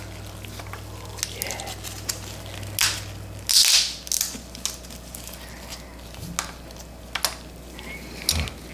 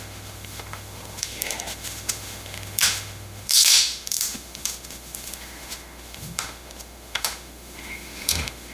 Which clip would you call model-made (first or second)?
second